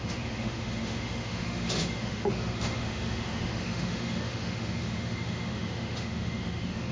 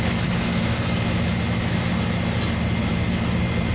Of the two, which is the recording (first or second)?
second